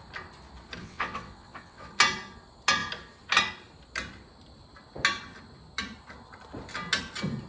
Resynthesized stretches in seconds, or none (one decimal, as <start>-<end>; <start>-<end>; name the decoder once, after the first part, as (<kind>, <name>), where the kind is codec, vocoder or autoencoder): 0.8-1.9 (vocoder, WaveNeXt)